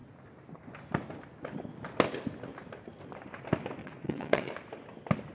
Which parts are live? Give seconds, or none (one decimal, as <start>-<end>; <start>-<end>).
0.0-3.8; 4.5-5.3